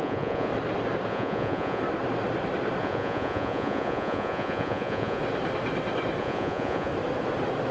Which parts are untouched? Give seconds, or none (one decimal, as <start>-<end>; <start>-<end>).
0.5-1.1; 1.8-2.8; 5.2-6.2; 6.9-7.7